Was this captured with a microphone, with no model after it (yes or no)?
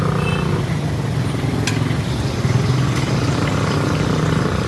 yes